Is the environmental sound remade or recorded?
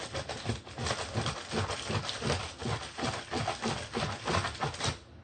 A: recorded